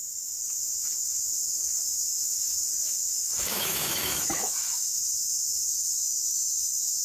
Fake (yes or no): yes